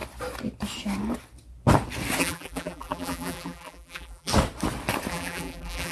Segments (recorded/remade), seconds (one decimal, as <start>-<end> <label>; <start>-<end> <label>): 0.0-2.2 recorded; 2.2-4.3 remade; 4.3-5.1 recorded; 5.1-5.9 remade